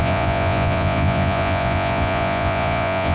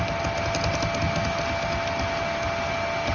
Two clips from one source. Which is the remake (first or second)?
first